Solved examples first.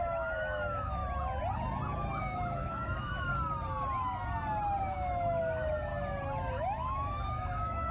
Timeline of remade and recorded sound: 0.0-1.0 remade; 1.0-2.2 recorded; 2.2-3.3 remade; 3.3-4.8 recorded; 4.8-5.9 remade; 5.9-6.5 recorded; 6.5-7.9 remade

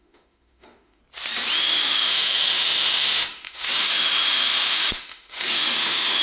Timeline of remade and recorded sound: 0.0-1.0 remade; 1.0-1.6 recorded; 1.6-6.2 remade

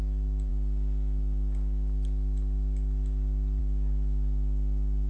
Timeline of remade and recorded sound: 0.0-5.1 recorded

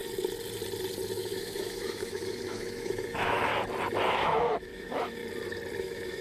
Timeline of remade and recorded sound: 0.0-1.2 recorded; 1.2-3.5 remade; 3.5-4.1 recorded; 4.1-5.2 remade; 5.2-5.8 recorded; 5.8-6.2 remade

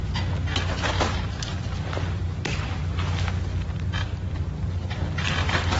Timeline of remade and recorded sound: 0.0-5.8 recorded